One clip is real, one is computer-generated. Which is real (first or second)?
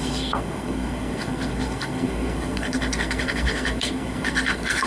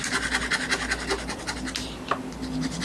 second